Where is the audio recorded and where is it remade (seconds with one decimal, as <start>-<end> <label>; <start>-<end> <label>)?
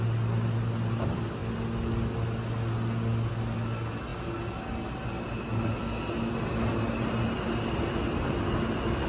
0.0-9.1 recorded